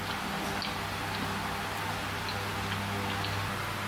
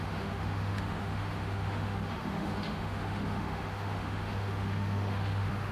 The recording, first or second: first